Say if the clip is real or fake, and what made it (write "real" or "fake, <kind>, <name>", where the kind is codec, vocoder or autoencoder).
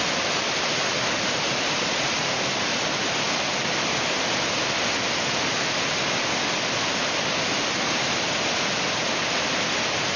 real